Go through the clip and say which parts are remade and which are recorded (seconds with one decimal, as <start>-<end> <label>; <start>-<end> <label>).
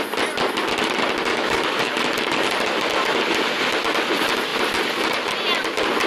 0.0-1.3 recorded; 1.3-1.9 remade; 1.9-6.1 recorded